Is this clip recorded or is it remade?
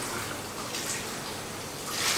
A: recorded